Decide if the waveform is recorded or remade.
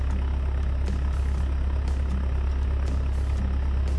recorded